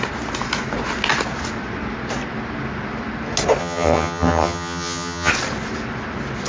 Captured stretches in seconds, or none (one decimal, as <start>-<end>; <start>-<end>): 0.0-3.6; 5.3-6.5